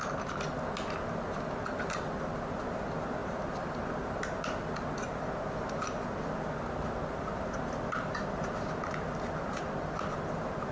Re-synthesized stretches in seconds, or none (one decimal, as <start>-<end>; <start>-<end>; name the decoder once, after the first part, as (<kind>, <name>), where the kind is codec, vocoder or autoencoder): none